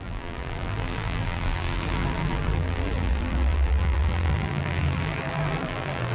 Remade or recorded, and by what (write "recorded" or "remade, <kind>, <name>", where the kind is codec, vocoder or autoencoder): remade, vocoder, BigVGAN v2